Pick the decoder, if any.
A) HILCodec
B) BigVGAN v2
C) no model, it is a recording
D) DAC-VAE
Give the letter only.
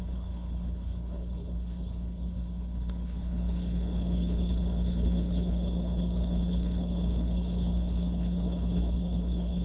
A